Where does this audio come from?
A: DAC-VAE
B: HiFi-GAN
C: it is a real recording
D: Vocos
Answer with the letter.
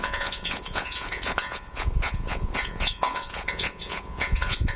D